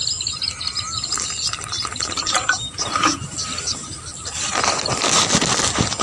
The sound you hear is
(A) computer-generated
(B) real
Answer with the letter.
B